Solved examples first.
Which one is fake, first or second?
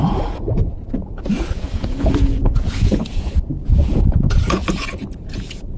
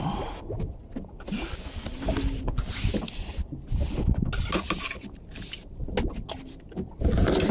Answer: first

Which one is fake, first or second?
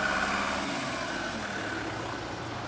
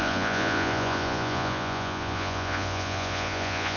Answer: second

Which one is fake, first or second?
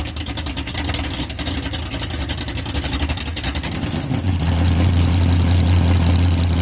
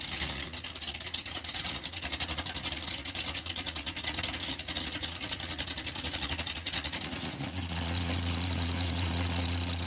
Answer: second